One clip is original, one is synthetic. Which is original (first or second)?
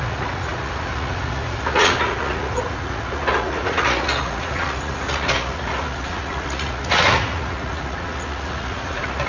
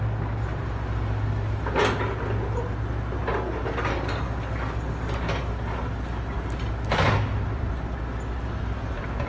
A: second